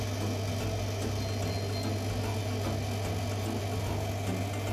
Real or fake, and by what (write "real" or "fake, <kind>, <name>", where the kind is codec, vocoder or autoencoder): real